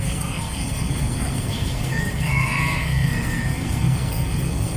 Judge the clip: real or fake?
fake